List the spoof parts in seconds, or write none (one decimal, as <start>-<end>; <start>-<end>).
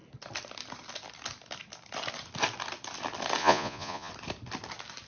3.4-4.1